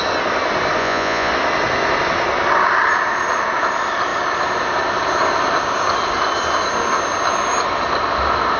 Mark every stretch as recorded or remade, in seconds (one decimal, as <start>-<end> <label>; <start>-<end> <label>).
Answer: 0.0-0.8 recorded; 0.8-1.3 remade; 1.3-8.6 recorded